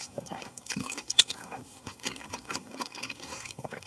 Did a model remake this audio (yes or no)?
yes